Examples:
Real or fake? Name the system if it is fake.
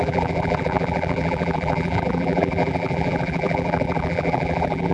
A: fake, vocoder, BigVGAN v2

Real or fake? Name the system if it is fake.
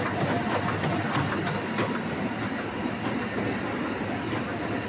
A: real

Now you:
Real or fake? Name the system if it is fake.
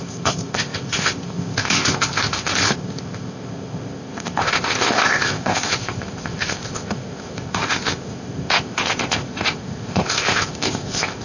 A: fake, codec, ZipCodec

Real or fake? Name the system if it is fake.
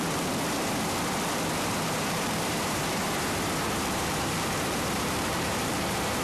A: fake, vocoder, BigVGAN v2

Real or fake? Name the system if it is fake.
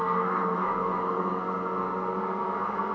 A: fake, codec, SNAC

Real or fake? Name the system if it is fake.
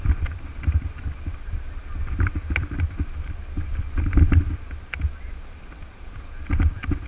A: real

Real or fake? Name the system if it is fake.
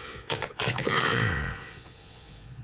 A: fake, vocoder, Vocos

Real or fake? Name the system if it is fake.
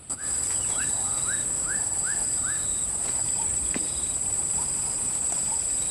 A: real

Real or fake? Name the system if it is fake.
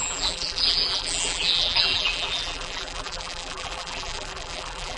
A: fake, vocoder, BigVGAN v2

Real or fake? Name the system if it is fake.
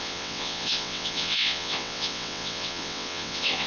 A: fake, vocoder, WaveNeXt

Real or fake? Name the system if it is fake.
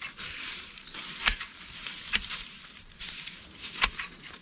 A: fake, vocoder, BigVGAN v2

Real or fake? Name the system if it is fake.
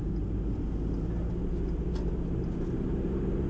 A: real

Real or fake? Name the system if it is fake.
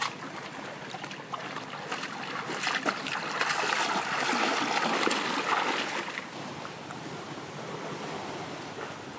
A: real